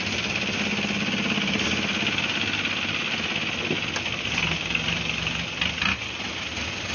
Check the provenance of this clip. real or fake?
real